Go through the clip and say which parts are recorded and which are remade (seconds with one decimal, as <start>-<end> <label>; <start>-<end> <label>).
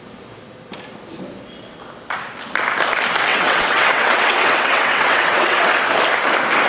0.0-3.3 recorded; 3.3-5.7 remade; 5.7-6.7 recorded